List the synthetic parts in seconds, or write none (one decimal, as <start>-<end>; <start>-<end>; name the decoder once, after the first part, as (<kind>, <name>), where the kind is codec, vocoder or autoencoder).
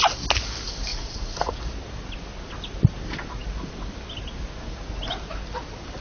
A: 0.9-1.6 (vocoder, Vocos)